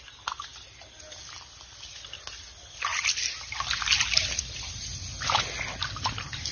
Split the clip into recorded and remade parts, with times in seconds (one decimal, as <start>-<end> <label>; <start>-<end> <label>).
0.0-6.5 recorded